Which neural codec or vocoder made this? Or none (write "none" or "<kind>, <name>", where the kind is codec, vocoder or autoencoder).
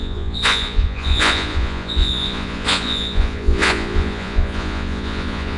vocoder, Vocos